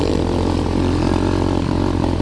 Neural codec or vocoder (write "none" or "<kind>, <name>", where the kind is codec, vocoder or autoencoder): none